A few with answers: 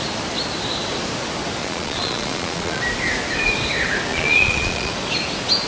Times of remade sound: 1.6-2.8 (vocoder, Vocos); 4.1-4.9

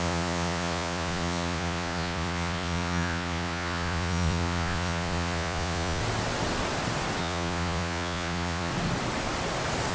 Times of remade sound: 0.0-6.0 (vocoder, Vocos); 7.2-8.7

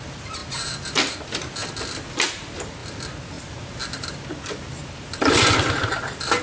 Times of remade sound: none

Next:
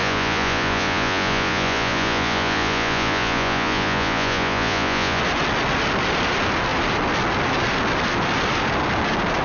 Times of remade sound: 0.0-5.2 (vocoder, Vocos)

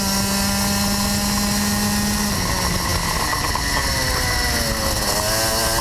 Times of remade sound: none

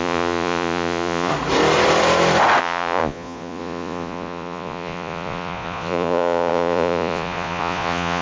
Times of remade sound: 0.0-1.3 (vocoder, Vocos); 2.6-8.2

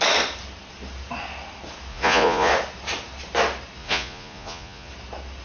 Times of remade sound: 1.9-2.5 (vocoder, Vocos); 3.8-4.9

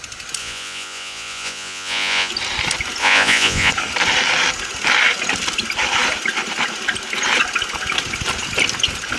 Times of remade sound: 0.4-2.3 (vocoder, Vocos); 3.0-3.7